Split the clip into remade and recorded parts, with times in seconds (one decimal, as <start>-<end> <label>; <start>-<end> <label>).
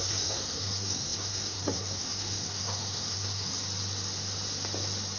0.0-3.5 remade; 3.5-5.2 recorded